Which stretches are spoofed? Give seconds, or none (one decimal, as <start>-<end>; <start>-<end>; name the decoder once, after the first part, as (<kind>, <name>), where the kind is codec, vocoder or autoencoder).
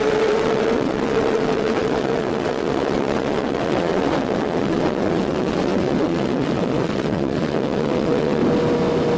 0.0-8.4 (vocoder, WaveNeXt)